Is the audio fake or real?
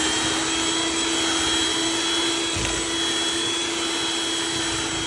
real